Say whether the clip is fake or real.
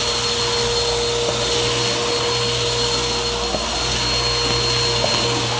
real